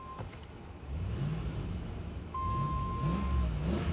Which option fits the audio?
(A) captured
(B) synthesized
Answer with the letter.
B